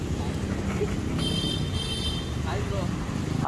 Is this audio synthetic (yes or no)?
no